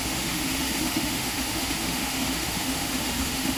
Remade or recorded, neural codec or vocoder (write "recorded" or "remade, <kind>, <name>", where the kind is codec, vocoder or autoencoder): remade, autoencoder, DAC-VAE